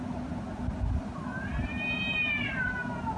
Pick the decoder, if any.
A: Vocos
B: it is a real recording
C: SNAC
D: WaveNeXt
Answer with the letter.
B